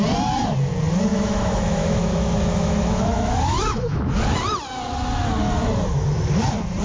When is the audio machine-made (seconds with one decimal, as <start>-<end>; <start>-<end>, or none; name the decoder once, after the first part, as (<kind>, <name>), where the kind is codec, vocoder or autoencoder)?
1.1-4.1 (autoencoder, DAC-VAE)

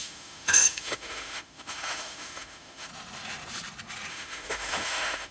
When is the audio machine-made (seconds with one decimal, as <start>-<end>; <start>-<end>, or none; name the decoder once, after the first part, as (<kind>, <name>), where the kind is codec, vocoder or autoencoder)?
0.0-2.9 (autoencoder, DAC-VAE); 4.1-5.3

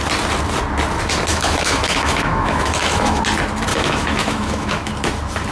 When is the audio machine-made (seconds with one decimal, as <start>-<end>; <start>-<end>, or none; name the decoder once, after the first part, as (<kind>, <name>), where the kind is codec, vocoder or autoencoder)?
1.3-3.2 (autoencoder, DAC-VAE); 3.7-4.9

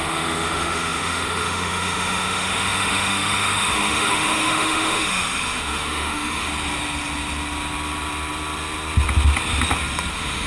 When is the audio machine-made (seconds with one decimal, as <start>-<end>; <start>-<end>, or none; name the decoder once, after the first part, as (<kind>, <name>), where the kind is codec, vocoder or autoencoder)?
0.0-6.5 (autoencoder, DAC-VAE); 10.1-10.5

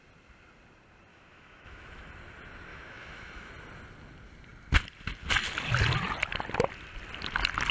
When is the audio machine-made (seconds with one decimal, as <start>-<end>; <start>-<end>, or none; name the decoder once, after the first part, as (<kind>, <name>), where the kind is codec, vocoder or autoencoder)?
1.1-2.1 (autoencoder, DAC-VAE); 2.7-3.5

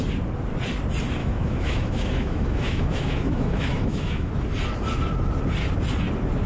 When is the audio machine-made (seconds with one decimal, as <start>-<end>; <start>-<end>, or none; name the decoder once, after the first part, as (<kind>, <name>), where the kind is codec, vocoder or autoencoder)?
1.2-4.3 (autoencoder, DAC-VAE)

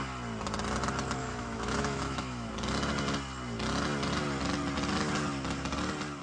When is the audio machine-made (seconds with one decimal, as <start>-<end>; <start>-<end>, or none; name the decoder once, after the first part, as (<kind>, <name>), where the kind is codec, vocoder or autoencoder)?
1.2-2.5 (autoencoder, DAC-VAE)

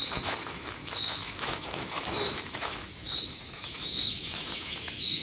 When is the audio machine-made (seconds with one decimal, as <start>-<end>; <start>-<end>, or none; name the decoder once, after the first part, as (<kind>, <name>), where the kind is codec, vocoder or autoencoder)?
0.0-5.2 (autoencoder, DAC-VAE)